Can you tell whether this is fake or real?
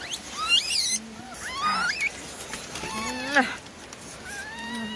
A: real